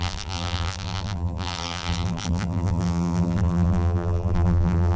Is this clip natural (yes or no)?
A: no